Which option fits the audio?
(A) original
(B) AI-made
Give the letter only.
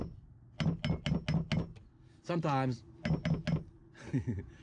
A